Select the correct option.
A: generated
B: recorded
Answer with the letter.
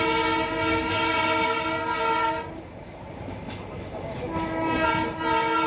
B